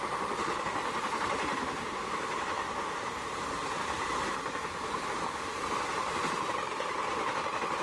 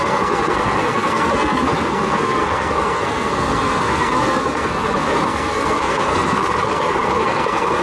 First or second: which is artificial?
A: second